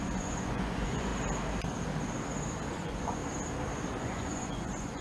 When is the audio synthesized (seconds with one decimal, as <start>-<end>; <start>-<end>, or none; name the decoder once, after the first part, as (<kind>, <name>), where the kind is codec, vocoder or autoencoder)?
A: 0.0-1.1 (vocoder, Vocos); 2.7-3.2; 4.0-5.0